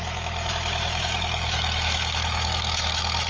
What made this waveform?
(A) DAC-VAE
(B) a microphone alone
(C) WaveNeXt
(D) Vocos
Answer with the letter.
A